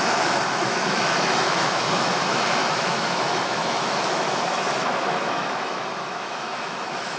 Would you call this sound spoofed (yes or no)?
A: yes